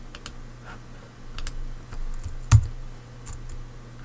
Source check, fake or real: real